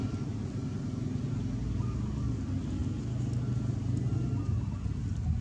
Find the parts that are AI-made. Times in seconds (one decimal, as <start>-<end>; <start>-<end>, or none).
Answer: none